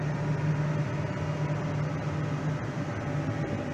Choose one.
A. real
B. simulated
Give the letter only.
A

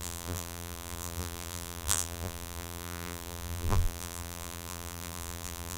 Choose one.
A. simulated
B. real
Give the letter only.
A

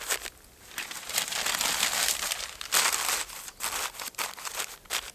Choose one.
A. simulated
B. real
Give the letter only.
B